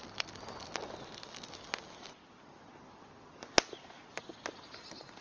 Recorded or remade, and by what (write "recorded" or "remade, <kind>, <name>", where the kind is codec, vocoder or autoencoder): recorded